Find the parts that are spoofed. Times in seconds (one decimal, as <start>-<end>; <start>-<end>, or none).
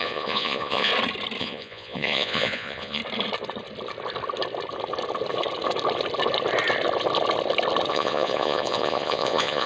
0.0-0.9; 1.4-3.0; 7.9-9.7